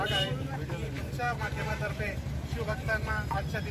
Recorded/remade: remade